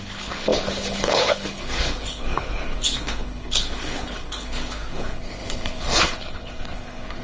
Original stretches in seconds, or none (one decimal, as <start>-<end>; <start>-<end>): none